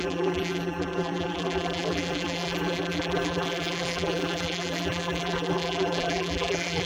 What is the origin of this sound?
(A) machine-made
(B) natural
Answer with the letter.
A